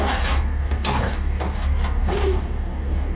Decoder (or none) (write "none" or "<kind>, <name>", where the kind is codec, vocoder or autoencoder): codec, DAC